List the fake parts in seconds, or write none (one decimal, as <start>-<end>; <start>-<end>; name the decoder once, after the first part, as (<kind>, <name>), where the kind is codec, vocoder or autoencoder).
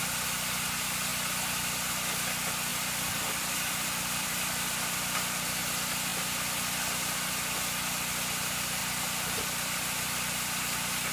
2.7-5.6 (vocoder, BigVGAN v2); 6.1-7.0; 8.8-11.1